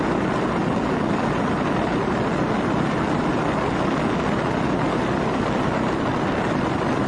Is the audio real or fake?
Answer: real